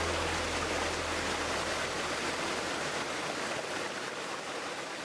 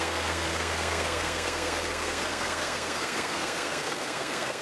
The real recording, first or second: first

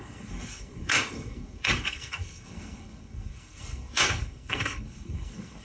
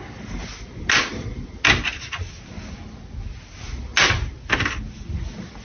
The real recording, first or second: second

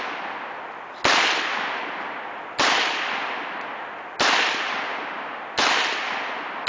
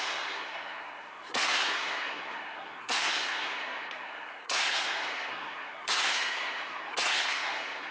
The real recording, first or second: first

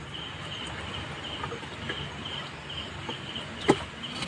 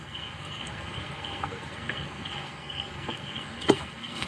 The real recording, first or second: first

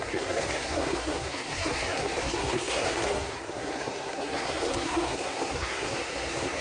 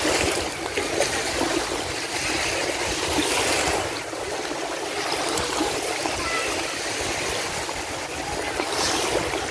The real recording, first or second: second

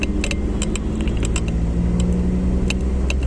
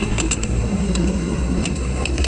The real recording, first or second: first